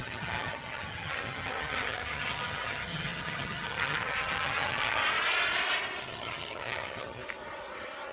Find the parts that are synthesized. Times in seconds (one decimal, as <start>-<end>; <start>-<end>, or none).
0.0-5.0; 6.0-7.2